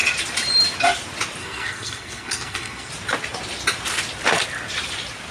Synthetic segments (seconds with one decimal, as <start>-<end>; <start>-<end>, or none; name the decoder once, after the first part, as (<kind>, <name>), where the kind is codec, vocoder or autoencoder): 1.4-2.9 (codec, SNAC)